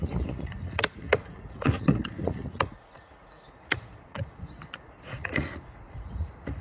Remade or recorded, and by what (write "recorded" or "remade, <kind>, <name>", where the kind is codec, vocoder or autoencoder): remade, vocoder, Vocos